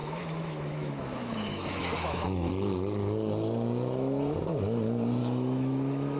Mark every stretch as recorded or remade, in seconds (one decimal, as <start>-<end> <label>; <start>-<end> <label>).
0.0-2.5 remade; 2.5-5.2 recorded; 5.2-6.2 remade